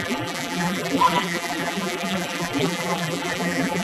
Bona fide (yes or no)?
no